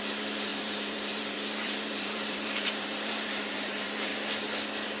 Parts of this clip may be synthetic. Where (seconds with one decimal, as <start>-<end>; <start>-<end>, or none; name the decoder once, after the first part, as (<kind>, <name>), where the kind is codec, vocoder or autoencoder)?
0.0-4.1 (vocoder, BigVGAN v2)